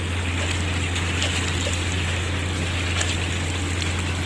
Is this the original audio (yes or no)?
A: yes